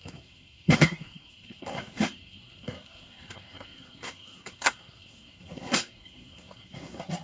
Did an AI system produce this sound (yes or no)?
yes